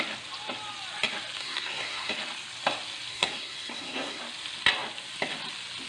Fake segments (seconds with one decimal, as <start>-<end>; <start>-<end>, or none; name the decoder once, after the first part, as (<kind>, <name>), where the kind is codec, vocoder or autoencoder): 1.4-2.1 (codec, SNAC); 3.1-4.2